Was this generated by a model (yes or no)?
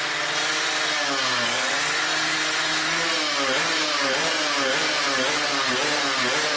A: no